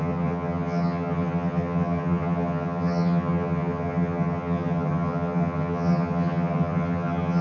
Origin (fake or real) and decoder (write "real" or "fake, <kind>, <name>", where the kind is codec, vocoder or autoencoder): fake, vocoder, HiFi-GAN